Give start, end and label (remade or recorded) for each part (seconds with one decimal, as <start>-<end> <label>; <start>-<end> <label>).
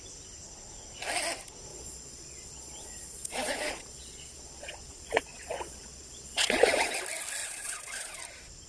0.0-1.7 recorded; 1.7-6.9 remade; 6.9-7.4 recorded; 7.4-8.2 remade; 8.2-8.7 recorded